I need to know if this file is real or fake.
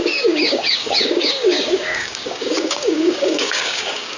fake